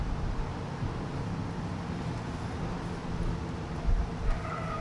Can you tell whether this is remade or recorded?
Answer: remade